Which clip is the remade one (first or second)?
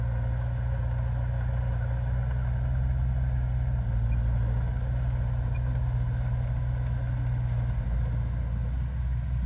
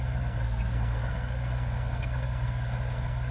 second